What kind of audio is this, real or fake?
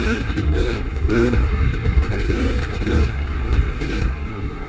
fake